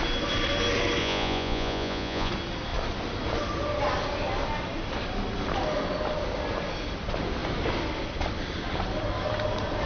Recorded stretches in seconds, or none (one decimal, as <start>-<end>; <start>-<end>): 0.0-1.0; 2.3-9.9